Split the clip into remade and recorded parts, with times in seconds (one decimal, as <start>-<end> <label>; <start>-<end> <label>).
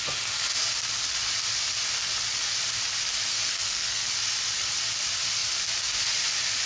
0.0-3.3 recorded; 3.3-4.1 remade; 4.1-6.7 recorded